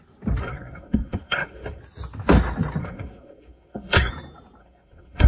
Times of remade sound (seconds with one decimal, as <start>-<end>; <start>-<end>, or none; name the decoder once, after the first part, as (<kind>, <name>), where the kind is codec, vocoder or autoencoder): 0.4-1.8 (codec, SNAC); 2.8-4.1; 4.6-5.3